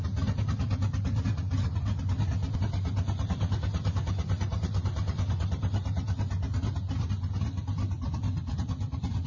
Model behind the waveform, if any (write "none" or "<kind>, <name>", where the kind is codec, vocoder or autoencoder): none